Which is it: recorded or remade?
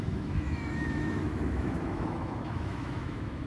remade